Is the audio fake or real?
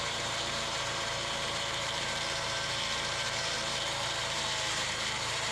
fake